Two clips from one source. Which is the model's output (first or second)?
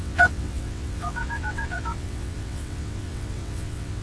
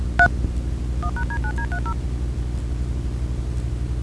first